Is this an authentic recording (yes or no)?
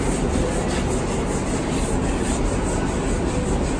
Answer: yes